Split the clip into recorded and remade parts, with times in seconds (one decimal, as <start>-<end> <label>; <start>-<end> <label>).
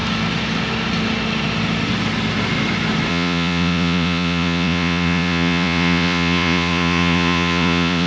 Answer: 0.0-3.1 recorded; 3.1-8.1 remade